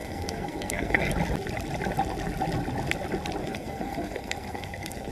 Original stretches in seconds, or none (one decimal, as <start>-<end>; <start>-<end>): 1.1-3.4